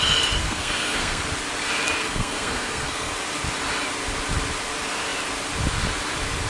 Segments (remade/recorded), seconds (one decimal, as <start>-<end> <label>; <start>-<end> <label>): 0.0-0.4 recorded; 0.4-1.2 remade; 1.2-2.0 recorded; 2.0-3.1 remade; 3.1-6.5 recorded